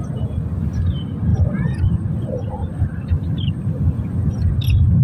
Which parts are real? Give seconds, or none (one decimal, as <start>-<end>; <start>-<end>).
0.0-1.3; 3.5-5.0